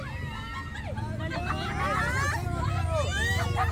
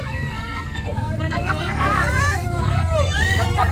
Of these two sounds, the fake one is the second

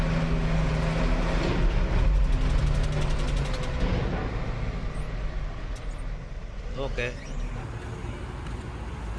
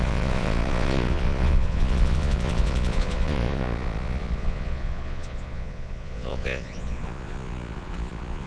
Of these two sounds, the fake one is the second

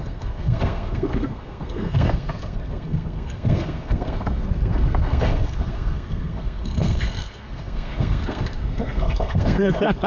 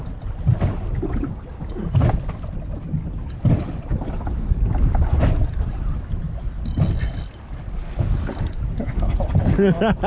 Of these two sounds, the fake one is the first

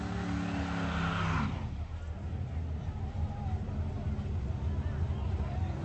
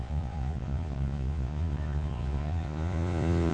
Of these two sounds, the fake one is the second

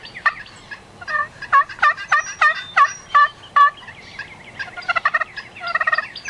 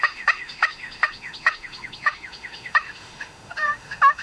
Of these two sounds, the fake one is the second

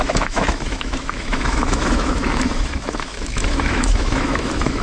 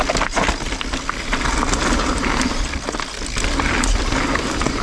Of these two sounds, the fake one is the first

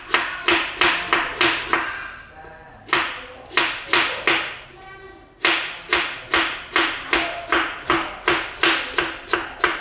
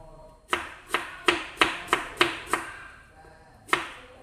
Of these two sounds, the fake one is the second